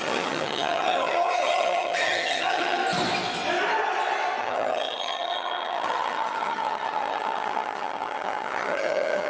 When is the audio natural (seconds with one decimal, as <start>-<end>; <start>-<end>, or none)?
2.8-4.4